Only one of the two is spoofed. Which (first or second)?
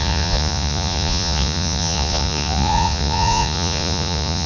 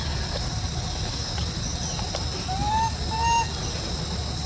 first